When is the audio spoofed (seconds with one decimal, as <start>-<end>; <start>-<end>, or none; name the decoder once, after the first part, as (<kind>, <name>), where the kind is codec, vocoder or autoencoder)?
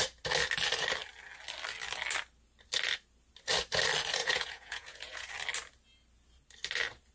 4.2-5.3 (vocoder, Vocos)